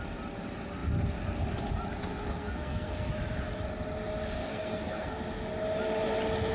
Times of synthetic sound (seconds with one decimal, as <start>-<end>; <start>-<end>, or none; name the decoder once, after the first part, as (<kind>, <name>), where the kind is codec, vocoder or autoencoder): 2.1-3.1 (codec, SNAC); 4.4-5.2